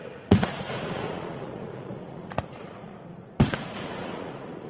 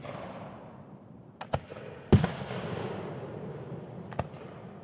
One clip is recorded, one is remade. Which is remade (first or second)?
first